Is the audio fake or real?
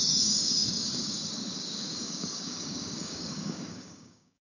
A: fake